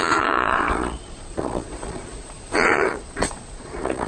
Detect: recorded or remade remade